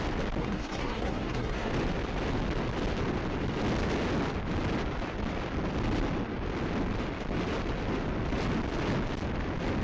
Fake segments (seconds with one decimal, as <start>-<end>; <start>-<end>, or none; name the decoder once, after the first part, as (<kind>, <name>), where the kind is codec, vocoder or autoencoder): 0.4-1.7 (codec, SNAC)